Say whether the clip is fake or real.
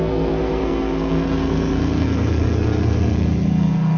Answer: fake